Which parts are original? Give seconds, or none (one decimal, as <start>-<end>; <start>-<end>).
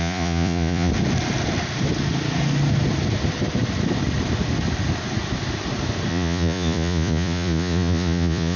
0.9-6.1